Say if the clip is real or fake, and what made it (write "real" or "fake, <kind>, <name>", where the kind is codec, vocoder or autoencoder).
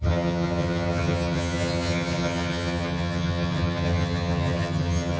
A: fake, vocoder, HiFi-GAN